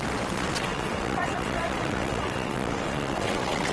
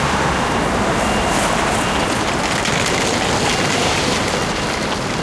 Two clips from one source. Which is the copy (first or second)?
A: first